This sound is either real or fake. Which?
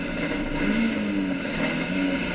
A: real